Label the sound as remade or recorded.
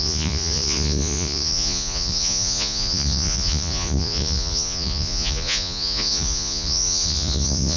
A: remade